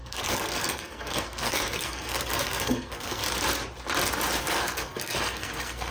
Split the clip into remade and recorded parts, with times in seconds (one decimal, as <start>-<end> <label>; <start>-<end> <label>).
0.0-3.2 remade; 3.2-4.4 recorded; 4.4-5.9 remade